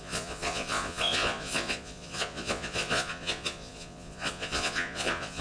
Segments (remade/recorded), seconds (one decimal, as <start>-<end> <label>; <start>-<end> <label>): 0.0-5.4 remade